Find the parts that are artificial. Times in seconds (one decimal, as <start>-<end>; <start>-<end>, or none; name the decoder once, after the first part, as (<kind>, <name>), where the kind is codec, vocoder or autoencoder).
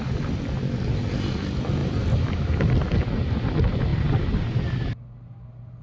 1.8-2.3 (vocoder, BigVGAN v2)